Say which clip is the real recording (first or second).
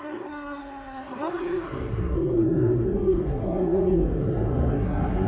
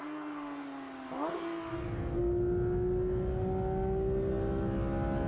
second